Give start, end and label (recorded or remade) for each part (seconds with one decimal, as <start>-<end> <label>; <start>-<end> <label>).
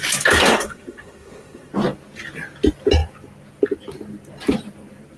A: 0.0-0.5 recorded; 0.5-1.7 remade; 1.7-5.2 recorded